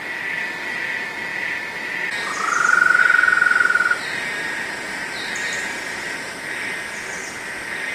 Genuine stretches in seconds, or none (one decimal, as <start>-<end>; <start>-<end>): 0.0-7.9